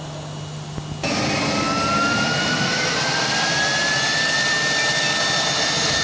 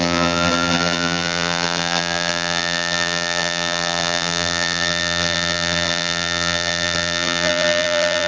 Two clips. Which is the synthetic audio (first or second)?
second